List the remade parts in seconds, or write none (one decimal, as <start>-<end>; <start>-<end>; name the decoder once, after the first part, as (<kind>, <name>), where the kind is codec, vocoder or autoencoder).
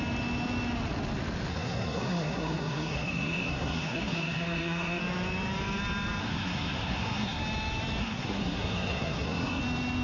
1.5-5.0 (codec, SNAC); 6.2-7.4; 8.0-9.6